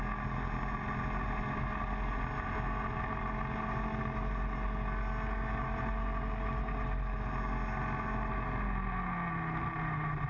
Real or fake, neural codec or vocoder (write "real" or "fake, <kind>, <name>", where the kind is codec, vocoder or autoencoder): real